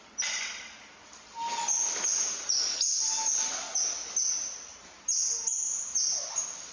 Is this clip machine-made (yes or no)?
no